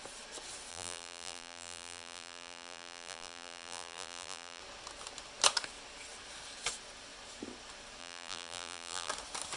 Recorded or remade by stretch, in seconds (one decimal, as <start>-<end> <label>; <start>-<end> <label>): 0.0-0.7 recorded; 0.7-4.6 remade; 4.6-8.0 recorded; 8.0-9.1 remade; 9.1-9.6 recorded